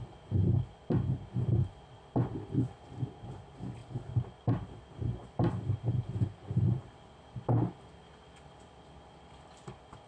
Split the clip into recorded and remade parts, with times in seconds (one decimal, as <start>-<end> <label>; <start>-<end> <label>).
0.0-10.1 recorded